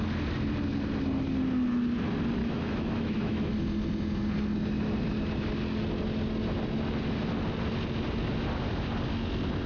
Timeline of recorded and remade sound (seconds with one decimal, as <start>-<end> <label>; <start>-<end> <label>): 0.0-2.4 recorded; 2.4-3.5 remade; 3.5-9.7 recorded

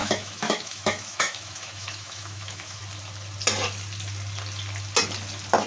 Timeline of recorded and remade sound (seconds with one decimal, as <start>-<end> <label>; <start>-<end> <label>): 0.0-2.8 remade; 2.8-5.7 recorded